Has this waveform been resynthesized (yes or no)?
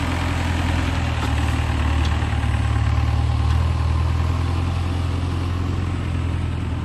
no